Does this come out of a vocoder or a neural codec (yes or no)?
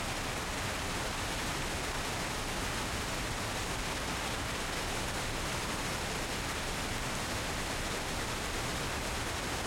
no